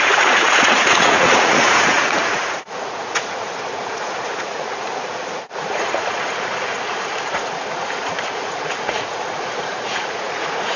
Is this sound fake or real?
fake